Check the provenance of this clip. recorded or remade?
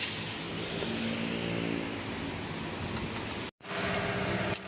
recorded